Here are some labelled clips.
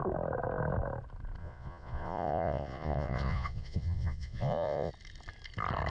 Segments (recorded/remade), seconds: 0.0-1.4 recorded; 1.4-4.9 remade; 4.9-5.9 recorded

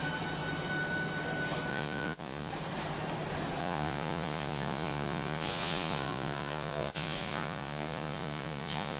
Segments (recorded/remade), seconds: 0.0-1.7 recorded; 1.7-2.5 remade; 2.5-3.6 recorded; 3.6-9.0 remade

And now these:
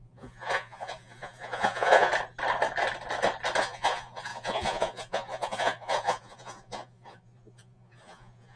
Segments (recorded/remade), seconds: 0.0-2.1 remade; 2.1-3.6 recorded; 3.6-8.6 remade

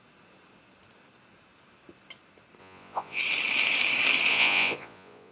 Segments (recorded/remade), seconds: 0.0-2.6 recorded; 2.6-3.2 remade; 3.2-4.3 recorded; 4.3-5.3 remade

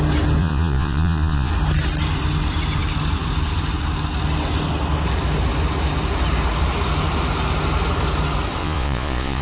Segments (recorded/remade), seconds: 0.0-0.4 recorded; 0.4-1.5 remade; 1.5-8.6 recorded; 8.6-9.4 remade